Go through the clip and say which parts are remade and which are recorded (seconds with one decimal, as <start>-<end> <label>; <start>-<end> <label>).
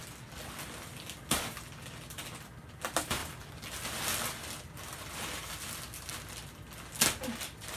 0.0-7.8 recorded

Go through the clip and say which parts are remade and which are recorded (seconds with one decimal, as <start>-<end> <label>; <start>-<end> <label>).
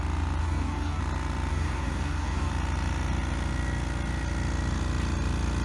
0.0-0.4 recorded; 0.4-1.0 remade; 1.0-1.5 recorded; 1.5-2.5 remade; 2.5-5.6 recorded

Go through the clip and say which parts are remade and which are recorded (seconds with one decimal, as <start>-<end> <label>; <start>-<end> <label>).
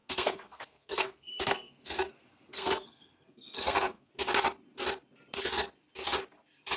0.0-4.1 remade; 4.1-6.8 recorded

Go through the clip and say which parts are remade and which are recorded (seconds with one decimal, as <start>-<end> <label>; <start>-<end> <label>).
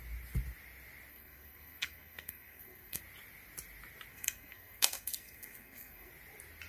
0.0-1.1 recorded; 1.1-3.0 remade; 3.0-4.1 recorded; 4.1-6.1 remade; 6.1-6.7 recorded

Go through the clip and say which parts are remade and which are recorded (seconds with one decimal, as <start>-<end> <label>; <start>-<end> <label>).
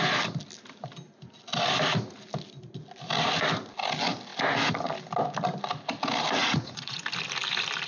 0.0-6.4 recorded; 6.4-7.0 remade; 7.0-7.9 recorded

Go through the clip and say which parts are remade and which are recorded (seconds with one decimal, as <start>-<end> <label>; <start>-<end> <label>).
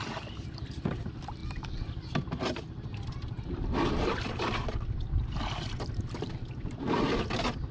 0.0-7.7 recorded